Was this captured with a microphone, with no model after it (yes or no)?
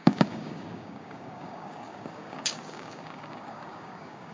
no